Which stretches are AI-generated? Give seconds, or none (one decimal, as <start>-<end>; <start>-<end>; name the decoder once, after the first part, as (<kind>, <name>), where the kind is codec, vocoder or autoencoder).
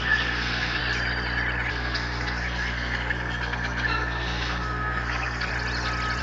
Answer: 0.0-0.8 (codec, SNAC); 1.7-5.5